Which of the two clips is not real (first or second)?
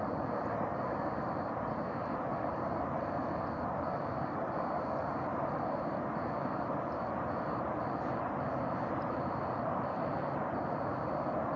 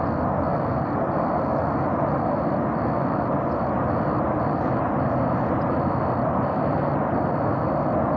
first